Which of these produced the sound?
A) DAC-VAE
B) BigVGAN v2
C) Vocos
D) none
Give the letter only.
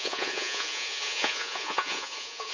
C